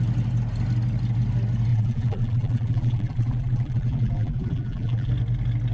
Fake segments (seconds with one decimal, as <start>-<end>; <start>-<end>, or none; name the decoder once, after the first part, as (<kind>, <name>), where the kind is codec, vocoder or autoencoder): 1.7-5.1 (vocoder, BigVGAN v2)